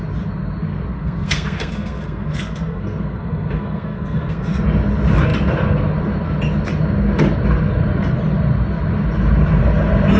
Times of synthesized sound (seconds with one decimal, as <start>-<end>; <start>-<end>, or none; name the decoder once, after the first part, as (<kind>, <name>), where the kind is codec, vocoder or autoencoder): 0.9-4.6 (codec, SNAC)